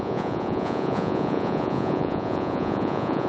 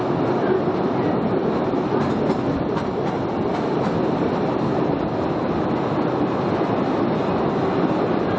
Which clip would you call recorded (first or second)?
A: second